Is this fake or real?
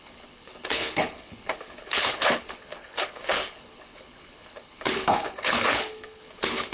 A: fake